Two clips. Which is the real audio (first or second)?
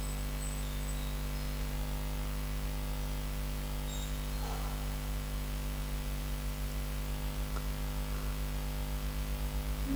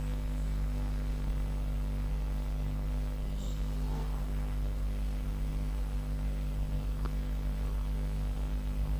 first